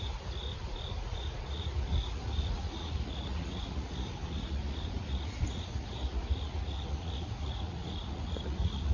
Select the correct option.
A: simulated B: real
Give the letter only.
A